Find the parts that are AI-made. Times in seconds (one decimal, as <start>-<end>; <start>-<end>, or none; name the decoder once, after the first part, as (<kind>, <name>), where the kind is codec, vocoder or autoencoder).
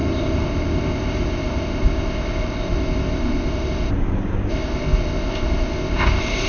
0.0-3.9 (codec, ZipCodec); 4.5-6.5